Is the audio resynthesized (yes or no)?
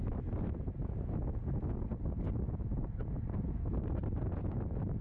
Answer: no